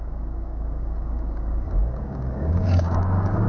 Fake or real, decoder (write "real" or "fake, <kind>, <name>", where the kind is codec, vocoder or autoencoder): fake, codec, DAC